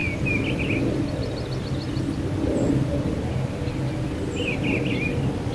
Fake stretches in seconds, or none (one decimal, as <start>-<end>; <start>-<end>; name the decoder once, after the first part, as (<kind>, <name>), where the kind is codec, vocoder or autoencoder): none